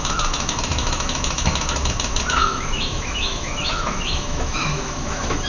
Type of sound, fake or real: fake